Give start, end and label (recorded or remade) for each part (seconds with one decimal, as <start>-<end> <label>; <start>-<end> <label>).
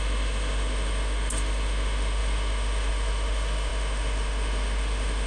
0.0-5.3 remade